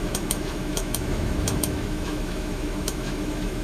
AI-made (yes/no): yes